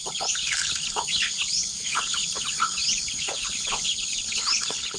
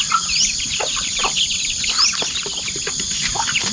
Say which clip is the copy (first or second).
first